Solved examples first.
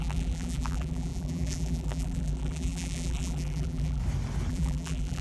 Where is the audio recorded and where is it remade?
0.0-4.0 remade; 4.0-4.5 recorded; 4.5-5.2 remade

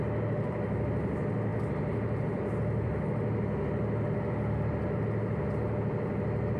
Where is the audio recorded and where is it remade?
0.0-6.6 recorded

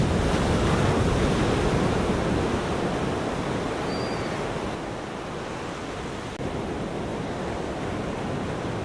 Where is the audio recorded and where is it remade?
0.0-8.8 recorded

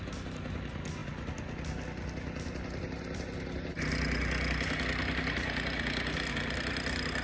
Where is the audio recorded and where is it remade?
0.0-7.2 recorded

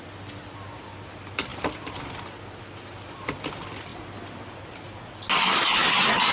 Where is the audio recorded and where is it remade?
0.0-1.5 remade; 1.5-2.2 recorded; 2.2-3.9 remade; 3.9-6.3 recorded

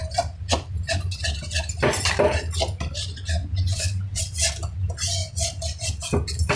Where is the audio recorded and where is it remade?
0.0-3.7 recorded; 3.7-4.2 remade; 4.2-6.6 recorded

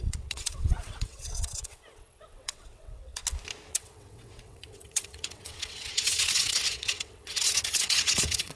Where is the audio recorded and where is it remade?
0.0-3.2 remade; 3.2-3.7 recorded; 3.7-8.6 remade